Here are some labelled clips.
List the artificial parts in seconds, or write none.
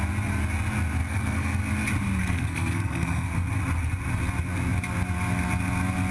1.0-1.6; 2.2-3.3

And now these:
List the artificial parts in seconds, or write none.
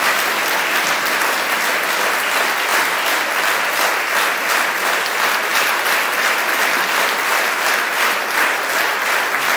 0.0-2.7; 4.5-9.6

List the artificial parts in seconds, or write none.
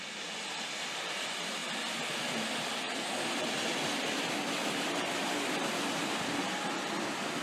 none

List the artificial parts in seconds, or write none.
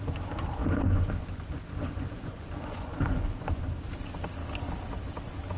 0.6-3.6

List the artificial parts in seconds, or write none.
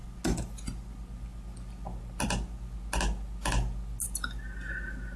none